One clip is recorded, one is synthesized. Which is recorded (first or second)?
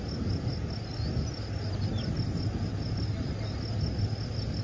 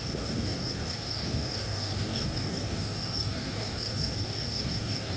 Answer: first